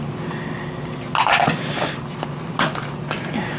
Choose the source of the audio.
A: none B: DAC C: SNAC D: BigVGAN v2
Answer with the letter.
A